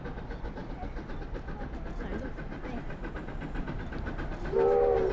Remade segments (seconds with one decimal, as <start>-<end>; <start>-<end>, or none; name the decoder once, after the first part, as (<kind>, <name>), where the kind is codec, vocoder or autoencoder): none